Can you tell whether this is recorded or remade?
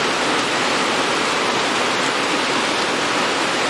recorded